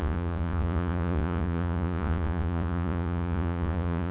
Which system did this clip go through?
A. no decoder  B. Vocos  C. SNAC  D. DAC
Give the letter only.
B